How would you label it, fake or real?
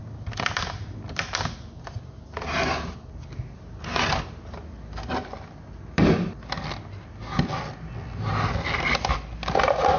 real